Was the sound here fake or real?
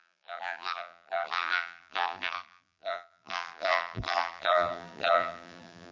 fake